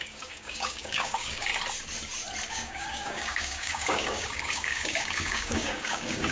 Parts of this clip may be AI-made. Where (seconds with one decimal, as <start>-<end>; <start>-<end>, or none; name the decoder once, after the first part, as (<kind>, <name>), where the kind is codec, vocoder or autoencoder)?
0.0-1.5 (codec, DAC); 2.5-6.3